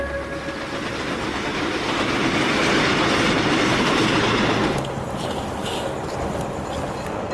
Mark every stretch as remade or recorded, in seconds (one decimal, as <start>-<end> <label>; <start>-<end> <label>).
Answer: 0.0-7.3 recorded